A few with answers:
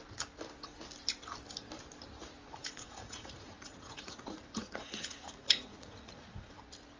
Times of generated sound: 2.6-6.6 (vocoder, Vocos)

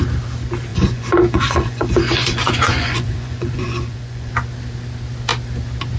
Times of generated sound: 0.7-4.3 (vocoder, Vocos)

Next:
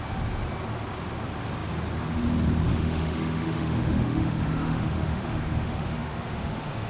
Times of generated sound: 2.7-6.9 (autoencoder, DAC-VAE)